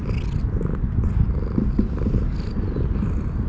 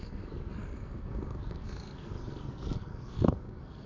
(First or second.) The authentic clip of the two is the first